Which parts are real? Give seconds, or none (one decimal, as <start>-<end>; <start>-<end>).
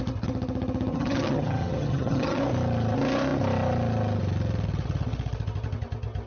0.0-0.9; 2.4-6.3